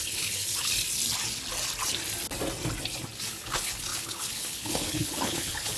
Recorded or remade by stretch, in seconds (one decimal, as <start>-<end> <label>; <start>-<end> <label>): 0.0-0.7 remade; 0.7-3.3 recorded; 3.3-5.8 remade